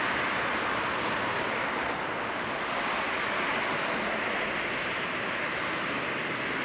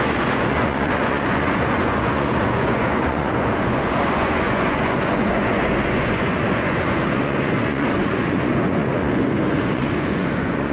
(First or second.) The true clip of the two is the first